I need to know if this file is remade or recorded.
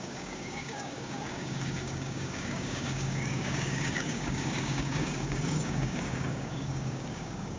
remade